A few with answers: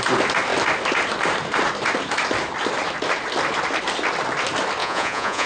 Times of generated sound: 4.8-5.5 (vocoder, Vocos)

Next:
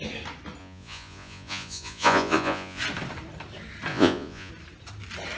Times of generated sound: 0.6-2.8 (vocoder, Vocos); 3.9-4.5

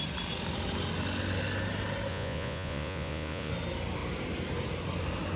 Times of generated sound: 2.1-3.5 (vocoder, Vocos)

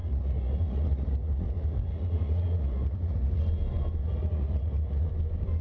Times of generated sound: 0.0-3.4 (vocoder, Vocos); 4.0-5.1

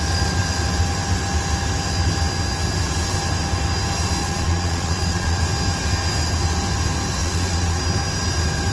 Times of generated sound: 4.2-5.4 (vocoder, Vocos); 7.2-7.8

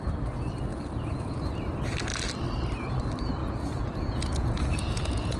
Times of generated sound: 0.7-1.4 (vocoder, Vocos); 3.4-5.4

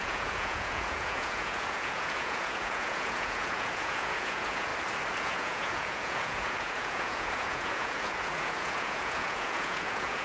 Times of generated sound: 0.0-4.7 (vocoder, Vocos); 5.2-10.2

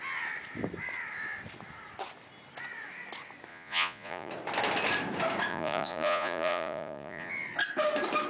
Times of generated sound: 3.5-4.3 (vocoder, Vocos); 5.5-7.3